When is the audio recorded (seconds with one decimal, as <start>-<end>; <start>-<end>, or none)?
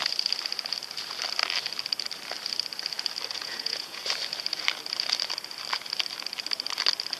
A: 0.0-3.4; 4.0-7.2